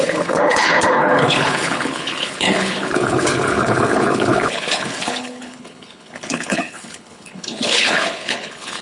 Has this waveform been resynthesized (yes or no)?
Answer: yes